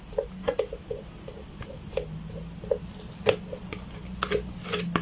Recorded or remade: recorded